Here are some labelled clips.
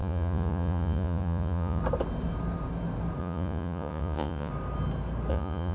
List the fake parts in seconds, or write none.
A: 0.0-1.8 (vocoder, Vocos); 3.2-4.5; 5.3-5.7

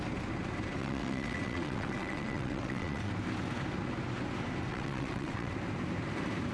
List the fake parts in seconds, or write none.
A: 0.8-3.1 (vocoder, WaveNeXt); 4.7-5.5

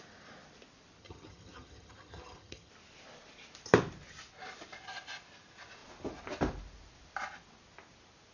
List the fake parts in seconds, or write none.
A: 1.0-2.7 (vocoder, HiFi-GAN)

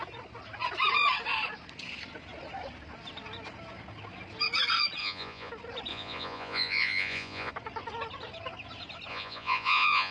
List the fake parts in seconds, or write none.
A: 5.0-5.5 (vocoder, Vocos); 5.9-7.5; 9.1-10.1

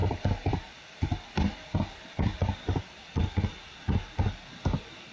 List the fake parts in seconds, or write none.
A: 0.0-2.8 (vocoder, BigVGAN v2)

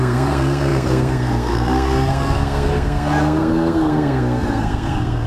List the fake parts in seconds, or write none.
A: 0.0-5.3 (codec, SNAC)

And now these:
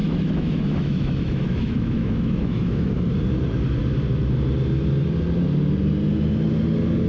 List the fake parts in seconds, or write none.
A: 0.0-2.9 (autoencoder, DAC-VAE)